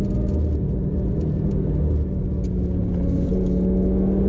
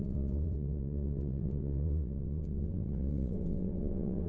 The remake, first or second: second